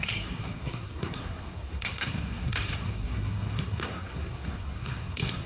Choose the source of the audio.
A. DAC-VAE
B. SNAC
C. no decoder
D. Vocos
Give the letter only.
B